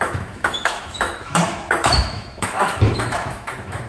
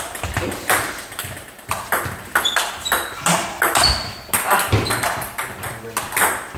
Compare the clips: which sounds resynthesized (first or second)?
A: first